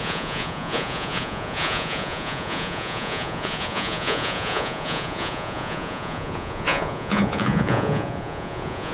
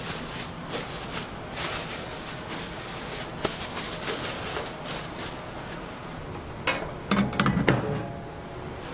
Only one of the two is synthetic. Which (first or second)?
first